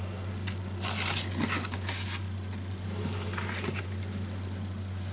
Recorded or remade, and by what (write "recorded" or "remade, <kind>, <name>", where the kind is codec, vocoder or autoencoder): recorded